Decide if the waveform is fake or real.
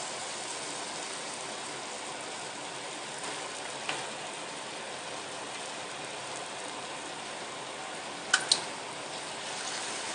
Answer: real